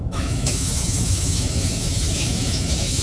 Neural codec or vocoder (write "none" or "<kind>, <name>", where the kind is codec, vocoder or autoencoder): autoencoder, DAC-VAE